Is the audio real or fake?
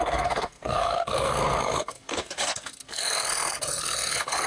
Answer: fake